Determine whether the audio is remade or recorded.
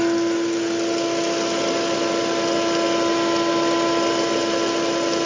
recorded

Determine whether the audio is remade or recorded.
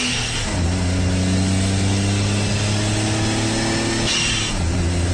recorded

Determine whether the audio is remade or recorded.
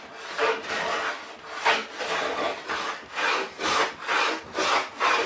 recorded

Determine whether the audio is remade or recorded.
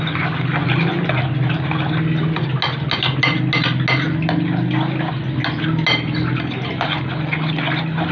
recorded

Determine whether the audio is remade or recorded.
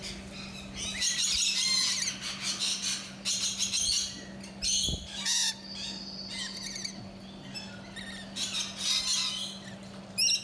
recorded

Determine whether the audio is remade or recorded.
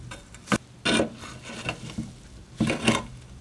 recorded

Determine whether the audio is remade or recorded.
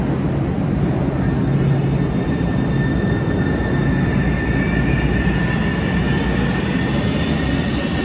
recorded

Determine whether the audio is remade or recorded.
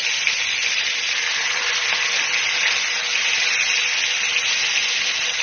recorded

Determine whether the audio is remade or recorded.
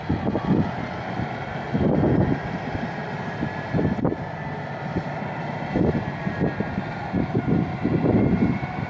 recorded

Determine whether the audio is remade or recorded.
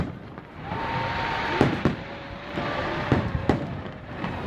remade